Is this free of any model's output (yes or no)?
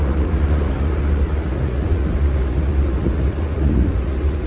no